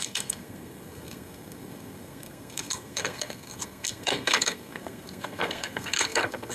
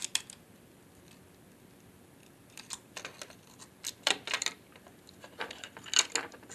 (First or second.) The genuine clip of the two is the second